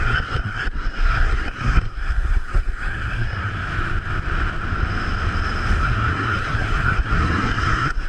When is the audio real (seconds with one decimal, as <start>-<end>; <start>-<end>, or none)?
3.5-5.8